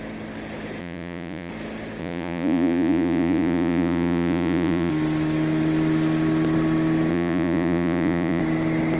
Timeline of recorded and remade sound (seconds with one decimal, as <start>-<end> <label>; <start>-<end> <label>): 0.0-0.8 recorded; 0.8-1.5 remade; 1.5-2.0 recorded; 2.0-4.9 remade; 4.9-7.1 recorded; 7.1-8.4 remade; 8.4-9.0 recorded